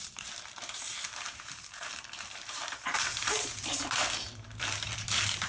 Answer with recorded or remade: remade